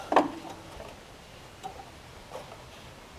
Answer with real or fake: real